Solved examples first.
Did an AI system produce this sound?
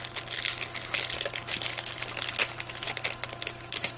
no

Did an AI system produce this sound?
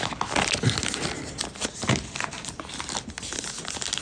no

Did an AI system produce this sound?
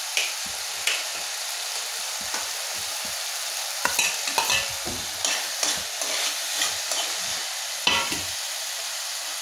yes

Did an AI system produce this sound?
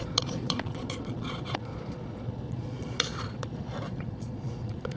yes